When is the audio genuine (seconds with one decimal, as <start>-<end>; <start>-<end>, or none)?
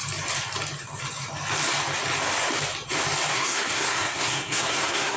0.0-3.3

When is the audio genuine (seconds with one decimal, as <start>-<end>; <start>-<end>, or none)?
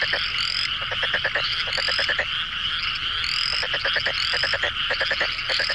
0.0-5.7